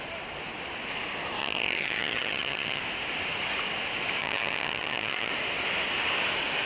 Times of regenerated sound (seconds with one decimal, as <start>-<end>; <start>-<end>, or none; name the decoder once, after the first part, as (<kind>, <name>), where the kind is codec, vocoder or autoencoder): 1.4-2.8 (vocoder, HiFi-GAN); 4.2-5.3